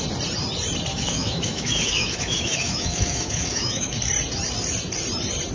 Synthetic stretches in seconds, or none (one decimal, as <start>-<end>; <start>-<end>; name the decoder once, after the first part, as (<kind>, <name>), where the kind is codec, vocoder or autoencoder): 0.9-4.0 (autoencoder, DAC-VAE)